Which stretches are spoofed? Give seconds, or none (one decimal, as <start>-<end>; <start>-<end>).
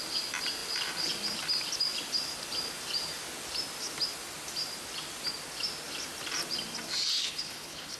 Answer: 7.1-8.0